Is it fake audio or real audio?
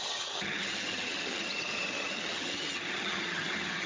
fake